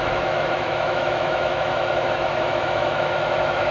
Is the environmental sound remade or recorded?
remade